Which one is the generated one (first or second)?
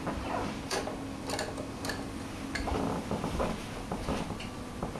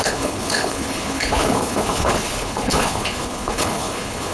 second